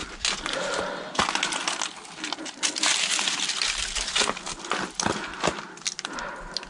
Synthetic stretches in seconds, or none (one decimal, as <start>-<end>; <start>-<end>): none